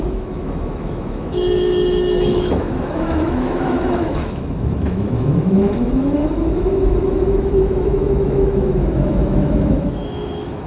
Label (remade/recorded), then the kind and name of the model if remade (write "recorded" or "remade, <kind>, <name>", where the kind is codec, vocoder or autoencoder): remade, autoencoder, DAC-VAE